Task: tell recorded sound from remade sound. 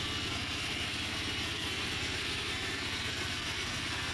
remade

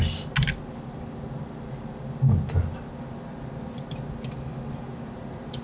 recorded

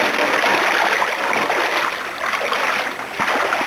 recorded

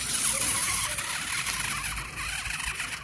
recorded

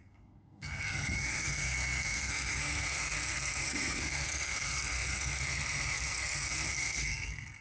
remade